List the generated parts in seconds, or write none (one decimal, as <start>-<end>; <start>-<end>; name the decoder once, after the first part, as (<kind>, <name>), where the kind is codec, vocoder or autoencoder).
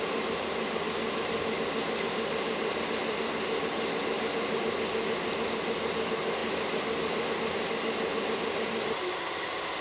none